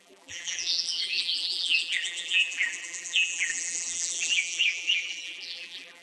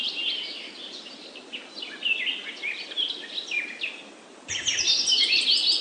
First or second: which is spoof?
first